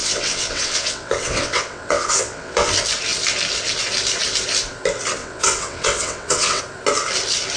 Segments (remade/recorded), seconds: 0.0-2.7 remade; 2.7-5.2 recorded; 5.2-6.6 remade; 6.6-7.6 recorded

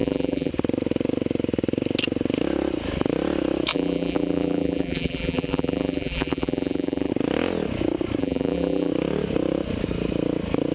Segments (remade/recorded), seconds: 0.0-0.5 remade; 0.5-3.7 recorded; 3.7-7.1 remade; 7.1-8.2 recorded; 8.2-8.9 remade; 8.9-10.7 recorded

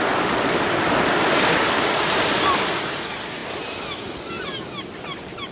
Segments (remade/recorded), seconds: 0.0-5.5 recorded

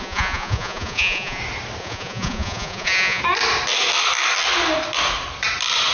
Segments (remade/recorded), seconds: 0.0-1.4 remade; 1.4-1.8 recorded; 1.8-3.2 remade; 3.2-5.9 recorded